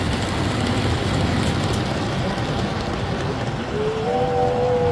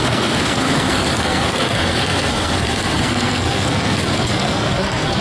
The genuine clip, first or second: first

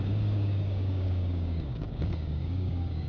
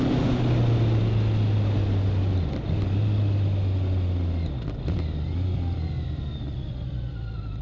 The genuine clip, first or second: second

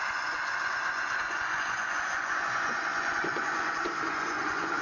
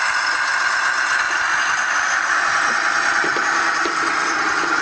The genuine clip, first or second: second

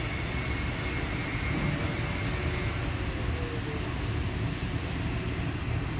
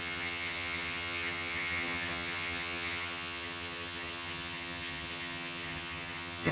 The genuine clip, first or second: first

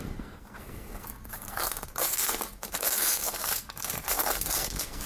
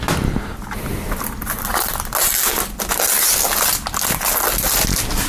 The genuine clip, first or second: second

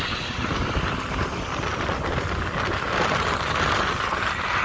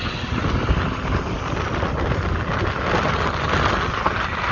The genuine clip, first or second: second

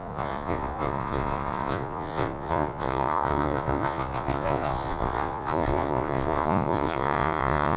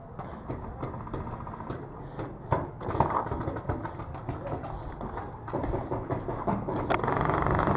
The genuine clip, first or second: second